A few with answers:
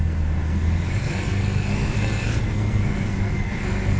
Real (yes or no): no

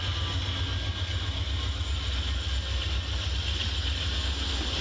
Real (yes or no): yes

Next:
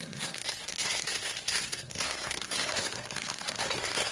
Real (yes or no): no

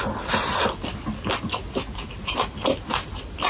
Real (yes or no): yes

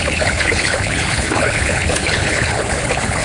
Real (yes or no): no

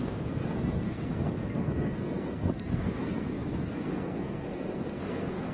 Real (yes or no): no